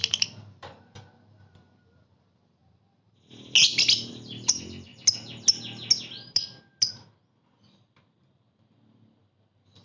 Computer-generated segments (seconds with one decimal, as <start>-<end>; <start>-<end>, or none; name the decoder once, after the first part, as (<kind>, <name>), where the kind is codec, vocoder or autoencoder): 0.0-2.6 (vocoder, BigVGAN v2); 4.1-4.9; 7.3-9.8